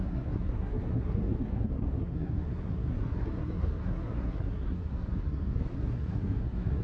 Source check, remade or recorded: remade